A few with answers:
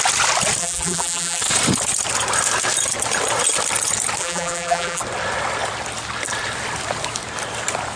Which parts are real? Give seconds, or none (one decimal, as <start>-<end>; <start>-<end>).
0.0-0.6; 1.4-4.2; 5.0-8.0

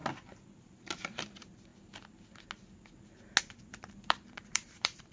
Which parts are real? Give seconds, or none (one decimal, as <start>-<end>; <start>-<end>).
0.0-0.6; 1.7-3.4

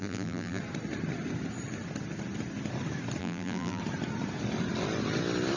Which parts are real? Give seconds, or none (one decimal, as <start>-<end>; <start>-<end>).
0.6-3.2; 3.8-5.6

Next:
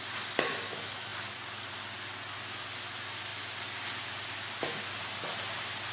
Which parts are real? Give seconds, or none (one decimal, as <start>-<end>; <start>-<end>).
0.0-5.9